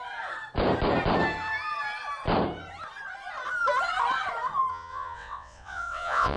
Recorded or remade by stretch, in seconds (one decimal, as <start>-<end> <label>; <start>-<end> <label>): 0.0-4.7 recorded; 4.7-6.4 remade